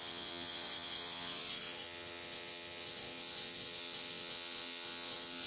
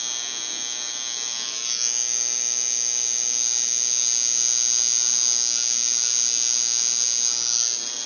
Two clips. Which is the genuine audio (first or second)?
second